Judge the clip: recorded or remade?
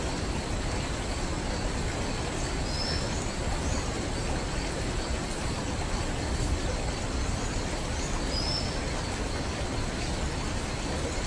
recorded